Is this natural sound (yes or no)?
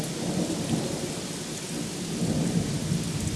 yes